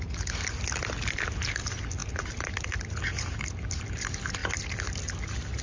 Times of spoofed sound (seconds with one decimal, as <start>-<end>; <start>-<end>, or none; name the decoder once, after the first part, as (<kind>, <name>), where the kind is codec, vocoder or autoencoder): none